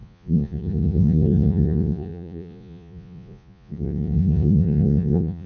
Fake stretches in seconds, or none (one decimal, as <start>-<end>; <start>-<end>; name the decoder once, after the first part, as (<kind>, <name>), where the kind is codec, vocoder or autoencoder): 0.0-5.5 (vocoder, Vocos)